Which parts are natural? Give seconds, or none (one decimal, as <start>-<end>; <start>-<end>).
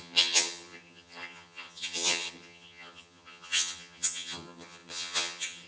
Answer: none